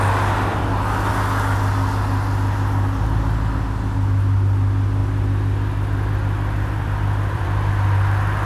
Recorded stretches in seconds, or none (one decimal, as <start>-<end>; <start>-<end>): 0.0-0.5; 1.1-5.0; 7.7-8.5